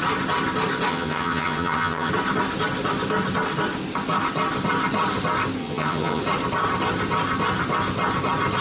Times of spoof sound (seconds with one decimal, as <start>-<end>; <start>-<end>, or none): 0.9-2.1; 5.6-6.2